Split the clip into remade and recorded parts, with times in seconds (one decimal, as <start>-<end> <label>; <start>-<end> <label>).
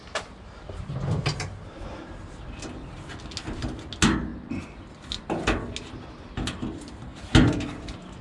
0.0-8.2 recorded